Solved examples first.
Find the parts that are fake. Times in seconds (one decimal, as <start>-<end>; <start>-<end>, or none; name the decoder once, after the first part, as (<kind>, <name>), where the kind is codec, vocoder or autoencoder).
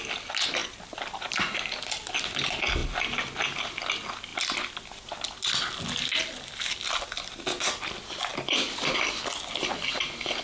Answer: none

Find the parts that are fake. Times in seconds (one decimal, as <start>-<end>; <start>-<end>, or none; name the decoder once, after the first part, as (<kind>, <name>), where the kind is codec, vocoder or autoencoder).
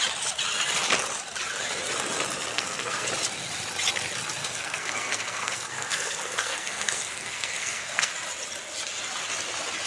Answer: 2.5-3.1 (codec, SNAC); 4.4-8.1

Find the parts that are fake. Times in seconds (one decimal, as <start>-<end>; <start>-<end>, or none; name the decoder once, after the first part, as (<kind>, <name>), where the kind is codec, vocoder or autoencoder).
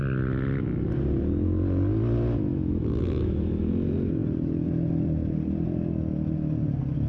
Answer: 2.5-3.7 (autoencoder, DAC-VAE)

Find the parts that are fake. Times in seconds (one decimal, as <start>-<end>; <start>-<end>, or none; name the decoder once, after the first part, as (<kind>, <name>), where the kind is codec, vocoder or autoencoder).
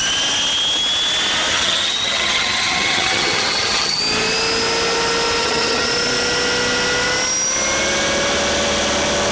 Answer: 1.5-4.0 (vocoder, HiFi-GAN); 5.4-5.9